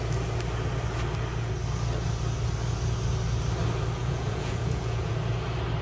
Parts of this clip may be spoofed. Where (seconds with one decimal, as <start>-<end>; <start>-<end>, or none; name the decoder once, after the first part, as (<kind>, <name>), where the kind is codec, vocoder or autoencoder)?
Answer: 4.0-5.1 (vocoder, Vocos)